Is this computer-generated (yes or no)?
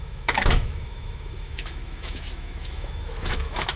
yes